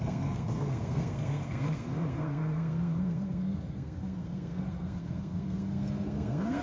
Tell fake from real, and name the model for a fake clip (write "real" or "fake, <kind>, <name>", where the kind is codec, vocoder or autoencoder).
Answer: fake, codec, SNAC